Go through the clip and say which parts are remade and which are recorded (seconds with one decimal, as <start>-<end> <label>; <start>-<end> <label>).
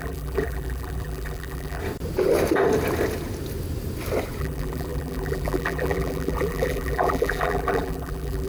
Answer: 0.0-1.8 remade; 1.8-4.4 recorded; 4.4-8.5 remade